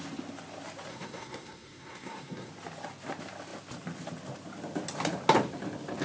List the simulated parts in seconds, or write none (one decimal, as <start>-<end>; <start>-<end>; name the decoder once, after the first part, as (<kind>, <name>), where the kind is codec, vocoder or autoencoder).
0.9-2.5 (codec, SNAC)